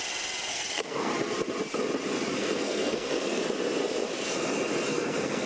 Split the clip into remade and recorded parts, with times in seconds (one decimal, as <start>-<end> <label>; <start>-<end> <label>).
0.0-0.5 recorded; 0.5-1.1 remade; 1.1-2.4 recorded; 2.4-3.4 remade; 3.4-4.9 recorded; 4.9-5.5 remade